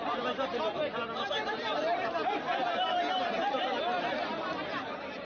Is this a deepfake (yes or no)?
no